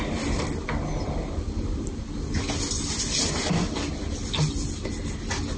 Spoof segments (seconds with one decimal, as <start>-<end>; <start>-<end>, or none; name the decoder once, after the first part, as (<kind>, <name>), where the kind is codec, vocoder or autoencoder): none